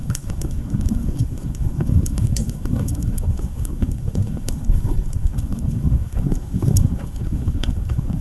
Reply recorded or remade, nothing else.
remade